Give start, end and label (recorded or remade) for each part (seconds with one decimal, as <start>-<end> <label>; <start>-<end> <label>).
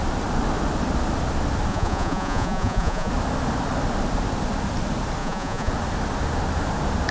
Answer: 0.0-1.7 recorded; 1.7-3.1 remade; 3.1-5.2 recorded; 5.2-5.7 remade; 5.7-7.1 recorded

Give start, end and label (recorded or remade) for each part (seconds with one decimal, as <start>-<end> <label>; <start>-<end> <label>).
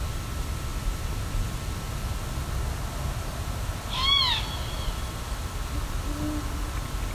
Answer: 0.0-7.1 recorded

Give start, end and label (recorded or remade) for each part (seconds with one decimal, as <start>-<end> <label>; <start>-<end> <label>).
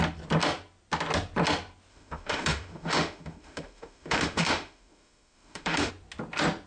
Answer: 0.0-1.9 recorded; 1.9-5.9 remade; 5.9-6.7 recorded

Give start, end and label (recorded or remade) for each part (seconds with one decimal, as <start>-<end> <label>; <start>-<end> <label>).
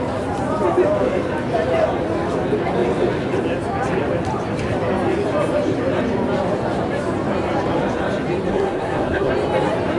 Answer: 0.0-8.5 recorded; 8.5-9.3 remade; 9.3-10.0 recorded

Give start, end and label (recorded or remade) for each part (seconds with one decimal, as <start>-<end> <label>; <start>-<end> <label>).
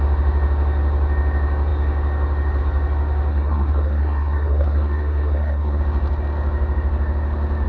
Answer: 0.0-3.3 recorded; 3.3-5.8 remade; 5.8-7.7 recorded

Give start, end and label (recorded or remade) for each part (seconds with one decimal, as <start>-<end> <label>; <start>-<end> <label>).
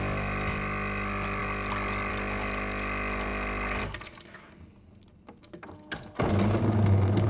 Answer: 0.0-7.3 recorded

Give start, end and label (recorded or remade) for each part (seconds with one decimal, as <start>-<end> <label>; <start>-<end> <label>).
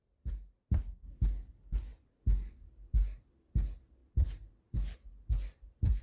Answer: 0.0-6.0 recorded